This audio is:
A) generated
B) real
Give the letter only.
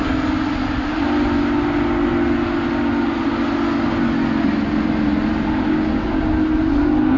B